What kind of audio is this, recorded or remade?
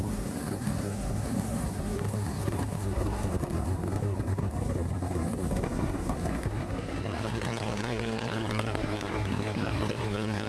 remade